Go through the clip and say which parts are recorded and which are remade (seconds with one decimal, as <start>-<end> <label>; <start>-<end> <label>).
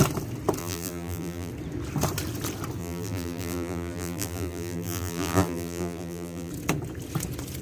0.0-0.6 recorded; 0.6-1.5 remade; 1.5-2.8 recorded; 2.8-6.5 remade; 6.5-7.6 recorded